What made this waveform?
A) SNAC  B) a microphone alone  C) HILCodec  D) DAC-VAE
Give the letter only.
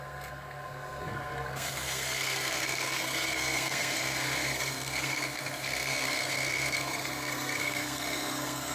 A